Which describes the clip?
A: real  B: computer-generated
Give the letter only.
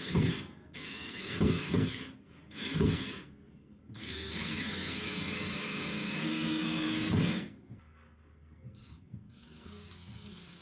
B